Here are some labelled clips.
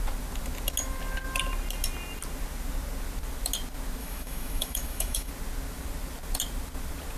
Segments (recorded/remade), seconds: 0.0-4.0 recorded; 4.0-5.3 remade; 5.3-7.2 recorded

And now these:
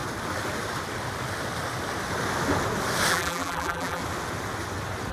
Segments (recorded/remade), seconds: 0.0-3.1 recorded; 3.1-4.0 remade; 4.0-5.1 recorded

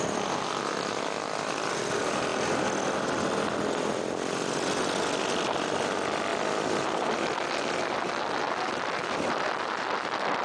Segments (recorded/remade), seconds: 0.0-10.4 recorded

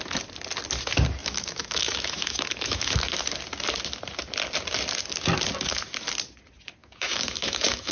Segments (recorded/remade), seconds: 0.0-1.2 recorded; 1.2-3.2 remade; 3.2-6.8 recorded; 6.8-7.9 remade

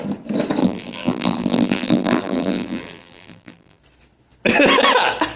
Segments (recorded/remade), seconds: 0.0-0.6 recorded; 0.6-3.8 remade; 3.8-5.4 recorded

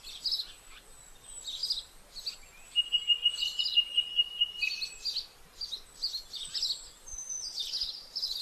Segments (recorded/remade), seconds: 0.0-7.1 recorded; 7.1-8.4 remade

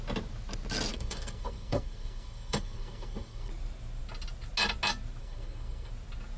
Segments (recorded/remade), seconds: 0.0-0.9 recorded; 0.9-3.5 remade; 3.5-5.2 recorded; 5.2-5.9 remade; 5.9-6.4 recorded